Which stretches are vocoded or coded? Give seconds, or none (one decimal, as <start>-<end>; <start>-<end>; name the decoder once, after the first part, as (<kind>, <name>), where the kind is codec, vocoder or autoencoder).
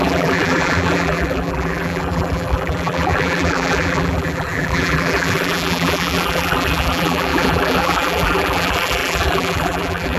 0.0-10.2 (vocoder, BigVGAN v2)